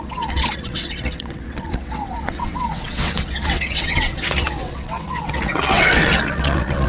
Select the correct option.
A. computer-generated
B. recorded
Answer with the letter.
A